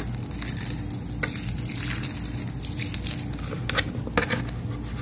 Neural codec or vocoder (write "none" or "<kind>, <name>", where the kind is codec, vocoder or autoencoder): none